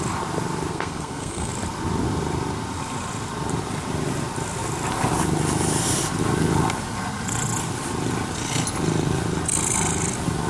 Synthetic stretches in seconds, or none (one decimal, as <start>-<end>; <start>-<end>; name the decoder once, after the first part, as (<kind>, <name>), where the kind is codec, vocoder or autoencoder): 0.7-1.5 (codec, SNAC)